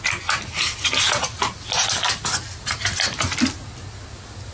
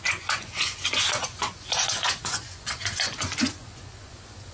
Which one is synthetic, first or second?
second